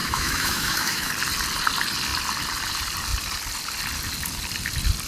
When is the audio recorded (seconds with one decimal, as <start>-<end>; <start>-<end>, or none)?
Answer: 1.1-5.1